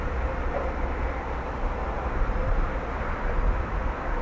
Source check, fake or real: real